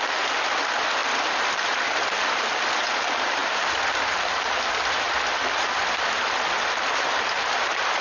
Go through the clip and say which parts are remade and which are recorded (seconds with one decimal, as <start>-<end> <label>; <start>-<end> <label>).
0.0-1.0 recorded; 1.0-2.5 remade; 2.5-3.4 recorded; 3.4-8.0 remade